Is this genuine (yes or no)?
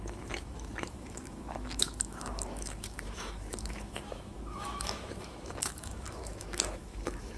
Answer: no